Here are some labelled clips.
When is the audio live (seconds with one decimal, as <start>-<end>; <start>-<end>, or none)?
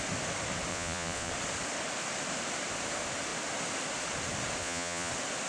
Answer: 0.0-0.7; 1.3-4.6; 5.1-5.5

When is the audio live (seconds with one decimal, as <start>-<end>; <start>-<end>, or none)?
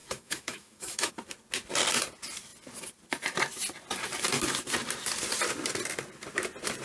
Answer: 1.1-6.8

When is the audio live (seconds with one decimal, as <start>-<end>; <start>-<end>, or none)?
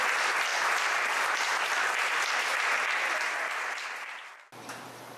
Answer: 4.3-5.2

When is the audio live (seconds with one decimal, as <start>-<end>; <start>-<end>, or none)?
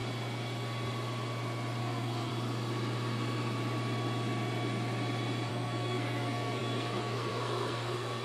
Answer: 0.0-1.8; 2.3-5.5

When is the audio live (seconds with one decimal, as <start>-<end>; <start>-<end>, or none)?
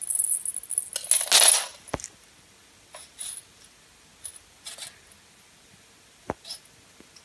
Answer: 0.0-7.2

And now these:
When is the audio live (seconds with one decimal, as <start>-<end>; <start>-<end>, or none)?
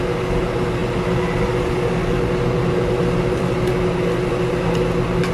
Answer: 0.0-5.3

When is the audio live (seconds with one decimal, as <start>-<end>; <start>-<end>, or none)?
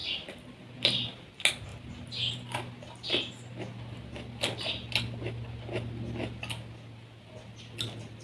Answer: 0.0-8.2